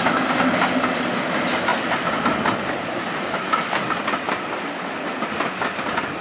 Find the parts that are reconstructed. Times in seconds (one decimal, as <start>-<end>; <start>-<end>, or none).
none